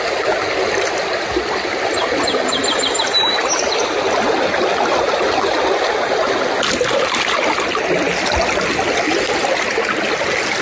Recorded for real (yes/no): yes